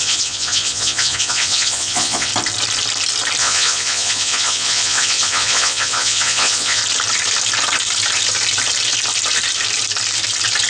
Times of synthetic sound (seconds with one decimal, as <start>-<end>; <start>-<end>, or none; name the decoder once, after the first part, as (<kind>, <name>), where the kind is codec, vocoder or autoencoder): 0.0-2.3 (vocoder, Vocos); 3.4-6.8